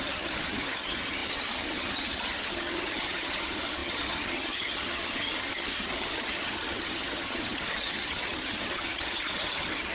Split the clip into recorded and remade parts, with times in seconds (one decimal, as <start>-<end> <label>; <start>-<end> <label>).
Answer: 0.0-9.9 remade